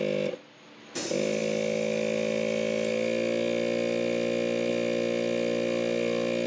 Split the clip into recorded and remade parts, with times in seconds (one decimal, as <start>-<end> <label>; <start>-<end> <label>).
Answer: 0.0-6.5 recorded